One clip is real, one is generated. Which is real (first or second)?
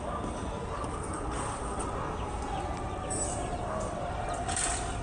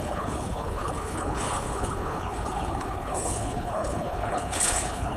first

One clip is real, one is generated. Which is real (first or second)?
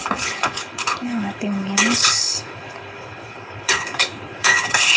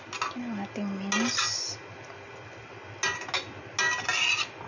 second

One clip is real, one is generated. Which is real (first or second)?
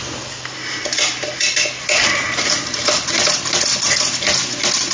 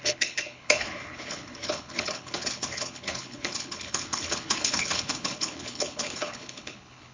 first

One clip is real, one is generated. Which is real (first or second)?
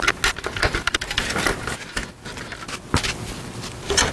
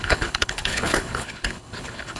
first